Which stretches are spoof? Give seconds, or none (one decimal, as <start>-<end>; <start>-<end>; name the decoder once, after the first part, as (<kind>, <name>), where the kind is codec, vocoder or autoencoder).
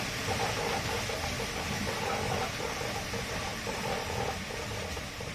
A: 3.5-4.4 (vocoder, BigVGAN v2)